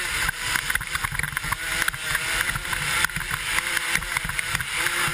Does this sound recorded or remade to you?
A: remade